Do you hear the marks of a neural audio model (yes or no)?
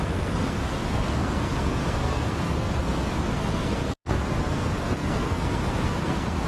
yes